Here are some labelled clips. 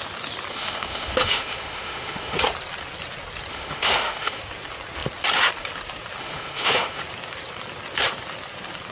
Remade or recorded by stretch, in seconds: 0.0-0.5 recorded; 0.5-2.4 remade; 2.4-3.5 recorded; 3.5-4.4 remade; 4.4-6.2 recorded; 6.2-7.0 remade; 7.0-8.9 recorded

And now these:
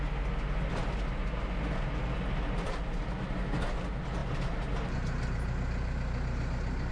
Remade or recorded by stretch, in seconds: 0.0-6.9 recorded

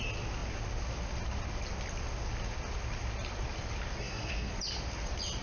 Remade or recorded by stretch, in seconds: 0.0-4.0 recorded; 4.0-4.5 remade; 4.5-5.4 recorded

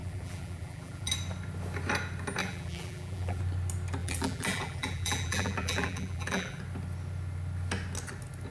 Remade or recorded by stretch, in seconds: 0.0-1.1 remade; 1.1-2.4 recorded; 2.4-3.4 remade; 3.4-4.0 recorded; 4.0-6.6 remade; 6.6-8.5 recorded